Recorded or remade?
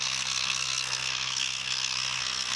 remade